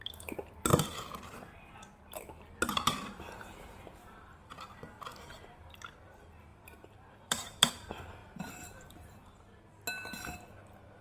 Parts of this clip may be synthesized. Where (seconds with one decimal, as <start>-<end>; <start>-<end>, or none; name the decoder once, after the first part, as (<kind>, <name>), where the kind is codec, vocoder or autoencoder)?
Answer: 3.0-4.5 (vocoder, BigVGAN v2); 6.5-7.7; 8.2-9.3